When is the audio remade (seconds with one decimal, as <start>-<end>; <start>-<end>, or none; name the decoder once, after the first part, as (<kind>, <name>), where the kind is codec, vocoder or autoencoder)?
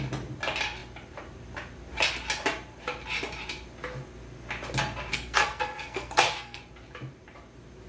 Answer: 5.1-6.6 (codec, SNAC)